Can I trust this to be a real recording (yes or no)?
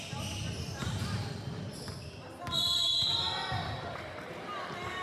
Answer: yes